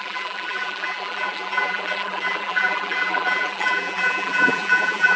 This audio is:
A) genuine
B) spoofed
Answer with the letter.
B